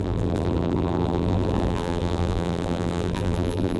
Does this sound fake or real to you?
fake